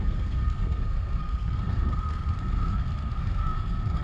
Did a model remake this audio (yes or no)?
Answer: yes